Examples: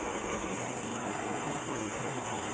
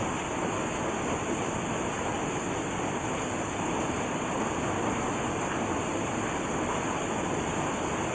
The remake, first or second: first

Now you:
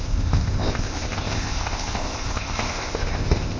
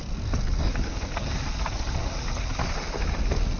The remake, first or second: first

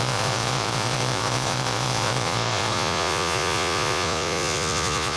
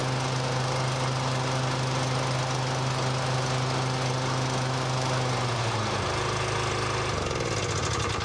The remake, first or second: first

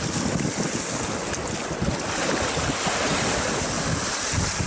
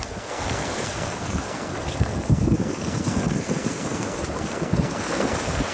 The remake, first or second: second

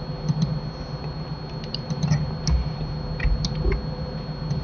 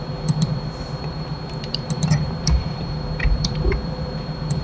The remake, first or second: second